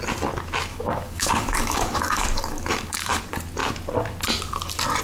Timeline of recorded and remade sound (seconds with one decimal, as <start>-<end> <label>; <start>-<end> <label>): 0.0-0.7 recorded; 0.7-3.2 remade; 3.2-5.0 recorded